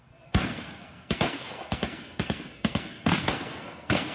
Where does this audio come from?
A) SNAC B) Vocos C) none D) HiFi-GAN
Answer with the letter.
A